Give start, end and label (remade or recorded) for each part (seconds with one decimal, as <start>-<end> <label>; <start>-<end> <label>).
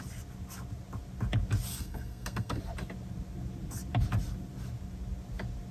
0.0-1.7 recorded; 1.7-2.6 remade; 2.6-5.7 recorded